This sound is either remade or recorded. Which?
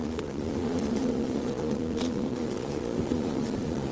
remade